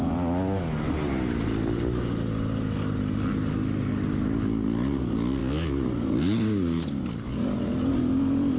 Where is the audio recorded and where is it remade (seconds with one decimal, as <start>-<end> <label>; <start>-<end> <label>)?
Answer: 0.0-8.6 recorded